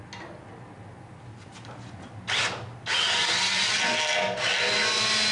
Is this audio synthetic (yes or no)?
no